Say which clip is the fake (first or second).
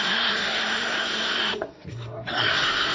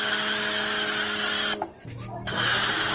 first